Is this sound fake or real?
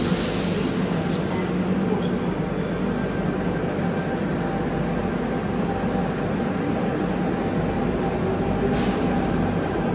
real